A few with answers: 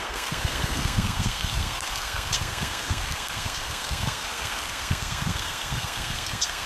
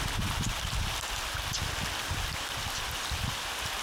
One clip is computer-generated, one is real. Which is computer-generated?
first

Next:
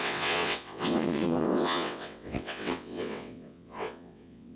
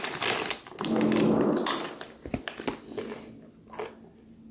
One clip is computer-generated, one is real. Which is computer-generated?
first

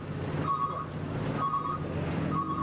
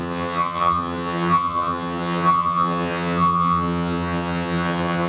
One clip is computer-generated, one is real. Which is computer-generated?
second